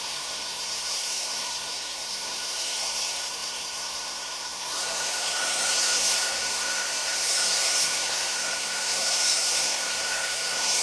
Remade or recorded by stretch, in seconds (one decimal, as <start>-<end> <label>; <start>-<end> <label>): 0.0-10.8 remade